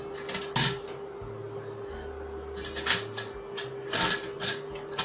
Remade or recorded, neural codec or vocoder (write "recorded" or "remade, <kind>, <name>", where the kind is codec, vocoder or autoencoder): recorded